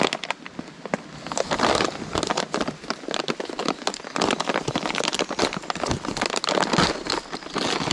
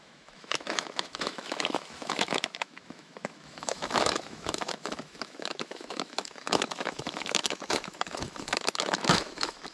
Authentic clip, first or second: first